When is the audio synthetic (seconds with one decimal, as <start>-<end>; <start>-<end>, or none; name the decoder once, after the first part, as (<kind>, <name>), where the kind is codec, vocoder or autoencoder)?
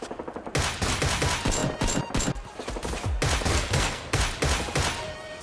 3.5-4.2 (codec, SNAC)